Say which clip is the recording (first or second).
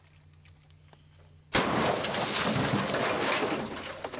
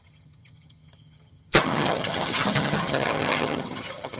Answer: first